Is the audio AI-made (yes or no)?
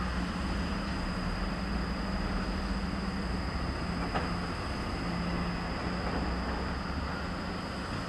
no